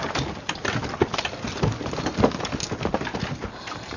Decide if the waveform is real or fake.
real